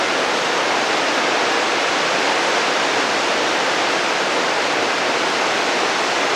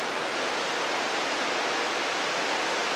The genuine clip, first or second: second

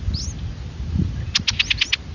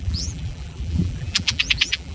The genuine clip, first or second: first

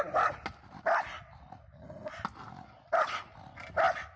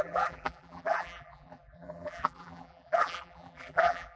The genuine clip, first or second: first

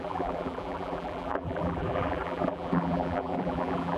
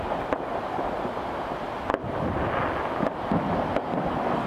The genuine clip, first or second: second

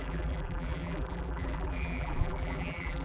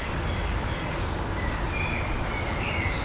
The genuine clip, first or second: second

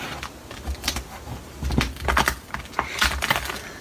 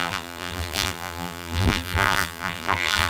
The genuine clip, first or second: first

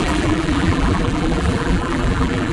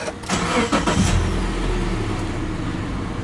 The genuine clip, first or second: second